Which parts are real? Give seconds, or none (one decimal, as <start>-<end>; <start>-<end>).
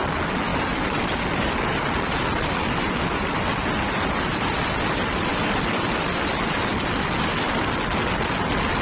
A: 0.0-8.8